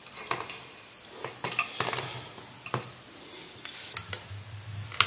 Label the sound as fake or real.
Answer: real